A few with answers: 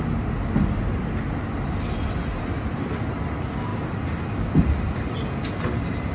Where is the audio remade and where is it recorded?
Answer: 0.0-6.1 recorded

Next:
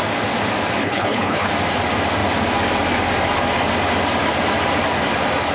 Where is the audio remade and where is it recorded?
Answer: 0.0-0.8 recorded; 0.8-1.5 remade; 1.5-5.5 recorded

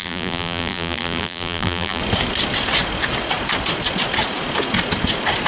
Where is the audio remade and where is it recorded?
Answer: 0.0-2.0 remade; 2.0-5.5 recorded

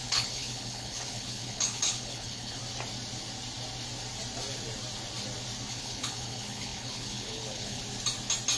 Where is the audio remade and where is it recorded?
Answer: 0.0-2.6 remade; 2.6-5.7 recorded; 5.7-7.8 remade; 7.8-8.6 recorded